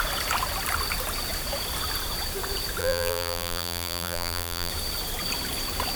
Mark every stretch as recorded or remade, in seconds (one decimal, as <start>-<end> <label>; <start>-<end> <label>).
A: 0.0-2.8 recorded; 2.8-4.7 remade; 4.7-6.0 recorded